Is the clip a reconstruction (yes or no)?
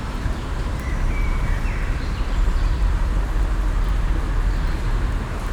yes